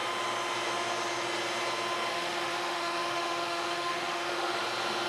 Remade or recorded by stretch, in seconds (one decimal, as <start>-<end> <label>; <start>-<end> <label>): 0.0-2.1 recorded; 2.1-4.5 remade; 4.5-5.1 recorded